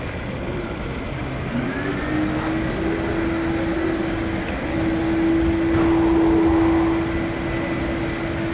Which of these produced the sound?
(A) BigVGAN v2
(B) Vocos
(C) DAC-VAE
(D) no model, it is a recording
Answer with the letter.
D